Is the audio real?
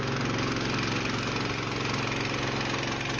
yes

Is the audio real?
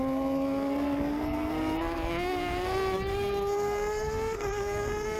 no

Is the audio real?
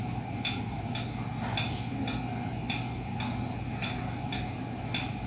yes